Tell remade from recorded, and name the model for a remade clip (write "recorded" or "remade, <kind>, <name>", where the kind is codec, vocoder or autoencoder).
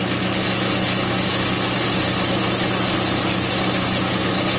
recorded